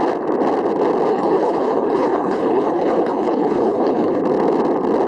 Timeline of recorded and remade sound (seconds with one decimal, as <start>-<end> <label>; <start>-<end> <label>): 0.0-1.1 recorded; 1.1-4.2 remade; 4.2-5.1 recorded